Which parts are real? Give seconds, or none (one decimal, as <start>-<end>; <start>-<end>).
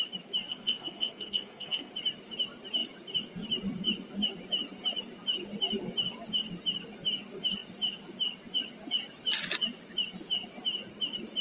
0.0-0.5; 1.9-11.4